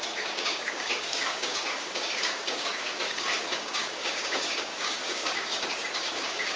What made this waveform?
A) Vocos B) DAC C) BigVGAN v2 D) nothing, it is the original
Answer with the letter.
B